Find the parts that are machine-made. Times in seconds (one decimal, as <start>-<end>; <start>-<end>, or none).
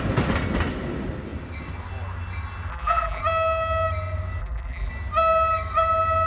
2.7-3.2; 4.4-4.9